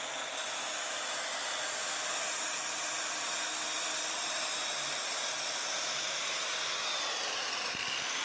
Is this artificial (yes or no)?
no